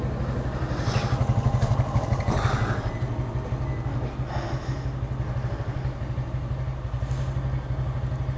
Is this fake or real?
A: real